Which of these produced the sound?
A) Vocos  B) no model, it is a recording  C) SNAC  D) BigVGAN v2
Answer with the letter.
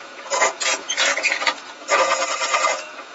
A